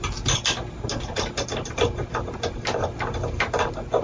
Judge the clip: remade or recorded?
recorded